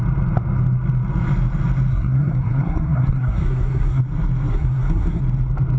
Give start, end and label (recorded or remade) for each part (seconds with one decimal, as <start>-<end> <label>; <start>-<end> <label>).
0.0-1.9 recorded; 1.9-4.0 remade; 4.0-4.5 recorded; 4.5-5.2 remade; 5.2-5.8 recorded